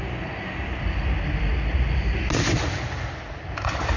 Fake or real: real